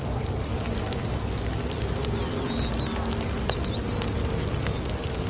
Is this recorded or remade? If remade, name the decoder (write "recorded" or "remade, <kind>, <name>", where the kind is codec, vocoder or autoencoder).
recorded